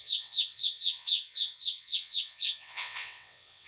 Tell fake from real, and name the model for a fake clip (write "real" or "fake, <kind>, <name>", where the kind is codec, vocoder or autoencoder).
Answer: fake, vocoder, WaveNeXt